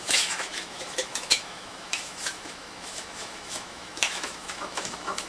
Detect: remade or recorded remade